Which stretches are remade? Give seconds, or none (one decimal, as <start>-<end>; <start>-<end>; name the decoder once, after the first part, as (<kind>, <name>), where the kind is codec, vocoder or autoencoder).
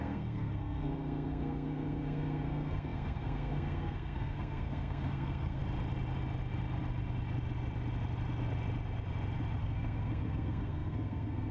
0.0-5.6 (codec, SNAC); 9.6-11.5